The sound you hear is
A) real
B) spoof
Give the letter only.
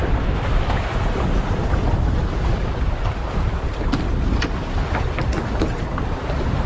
A